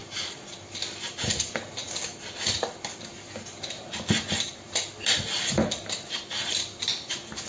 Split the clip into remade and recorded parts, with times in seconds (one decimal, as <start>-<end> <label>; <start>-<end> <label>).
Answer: 0.0-7.5 recorded